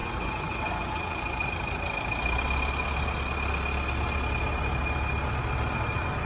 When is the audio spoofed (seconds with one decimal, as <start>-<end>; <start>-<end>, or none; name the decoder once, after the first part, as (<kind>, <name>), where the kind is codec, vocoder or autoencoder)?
0.0-1.5 (vocoder, Vocos)